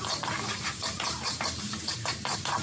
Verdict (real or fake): fake